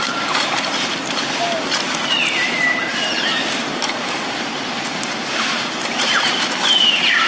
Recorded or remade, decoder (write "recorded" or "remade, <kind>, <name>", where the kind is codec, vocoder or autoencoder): remade, vocoder, BigVGAN v2